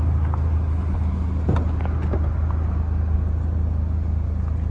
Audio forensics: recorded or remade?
recorded